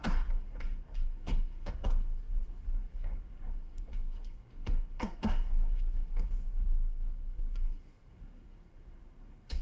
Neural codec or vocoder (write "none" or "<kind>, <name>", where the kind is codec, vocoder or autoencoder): codec, SNAC